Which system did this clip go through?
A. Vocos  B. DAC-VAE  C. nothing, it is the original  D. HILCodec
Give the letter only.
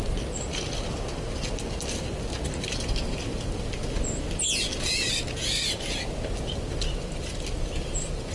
C